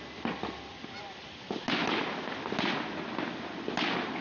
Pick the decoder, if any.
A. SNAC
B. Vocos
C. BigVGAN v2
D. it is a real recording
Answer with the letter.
D